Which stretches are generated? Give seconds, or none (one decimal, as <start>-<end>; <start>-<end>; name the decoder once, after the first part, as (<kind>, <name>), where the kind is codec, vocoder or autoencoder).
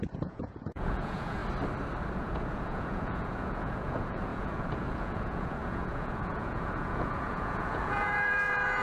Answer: 0.0-1.4 (vocoder, Vocos); 2.2-8.8